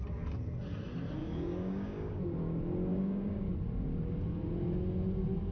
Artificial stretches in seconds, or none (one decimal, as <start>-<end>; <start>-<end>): 1.2-2.2; 2.9-3.5